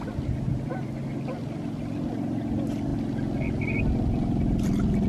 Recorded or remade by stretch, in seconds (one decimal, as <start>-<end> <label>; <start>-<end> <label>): 0.0-5.1 recorded